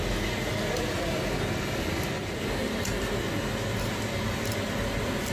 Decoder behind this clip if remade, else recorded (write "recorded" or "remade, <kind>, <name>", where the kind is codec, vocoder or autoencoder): recorded